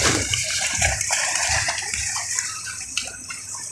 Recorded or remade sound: remade